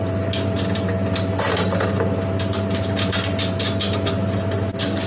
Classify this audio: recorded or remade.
recorded